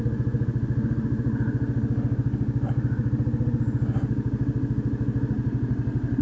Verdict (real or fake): real